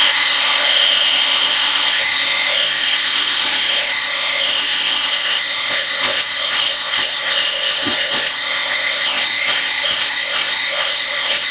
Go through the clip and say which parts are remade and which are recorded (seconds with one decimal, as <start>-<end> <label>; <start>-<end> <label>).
0.0-11.5 remade